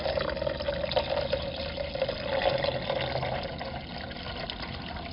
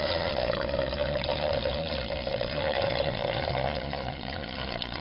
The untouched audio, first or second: first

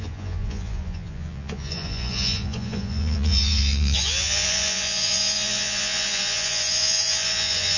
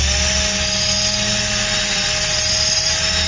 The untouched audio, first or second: second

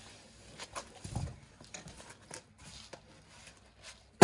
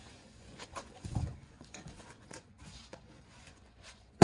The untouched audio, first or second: first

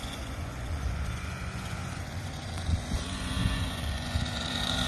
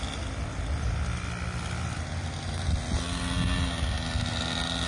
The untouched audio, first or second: second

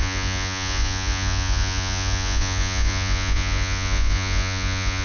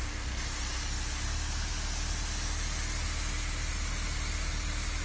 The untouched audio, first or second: second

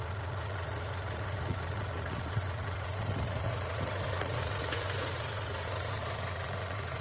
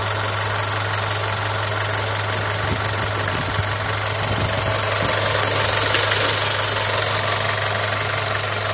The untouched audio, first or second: second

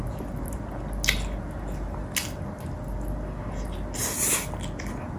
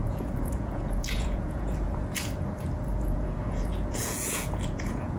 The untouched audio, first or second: first